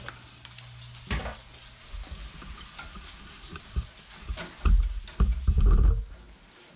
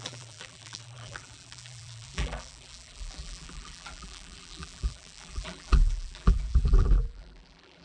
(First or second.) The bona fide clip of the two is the first